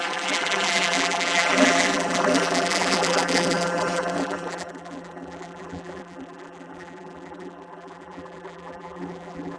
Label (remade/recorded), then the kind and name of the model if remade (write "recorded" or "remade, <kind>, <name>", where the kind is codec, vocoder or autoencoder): remade, vocoder, BigVGAN v2